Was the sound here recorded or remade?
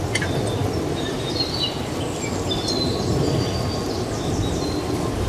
recorded